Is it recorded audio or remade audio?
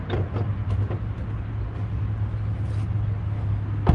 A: recorded